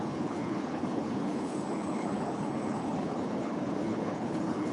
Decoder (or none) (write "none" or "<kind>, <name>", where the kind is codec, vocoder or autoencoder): codec, HILCodec